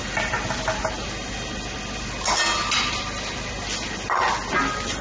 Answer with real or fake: real